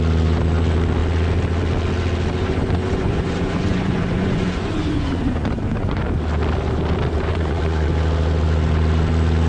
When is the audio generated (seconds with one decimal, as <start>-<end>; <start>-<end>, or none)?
2.4-6.0; 7.3-7.9